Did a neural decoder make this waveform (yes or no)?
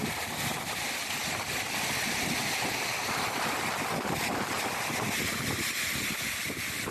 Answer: no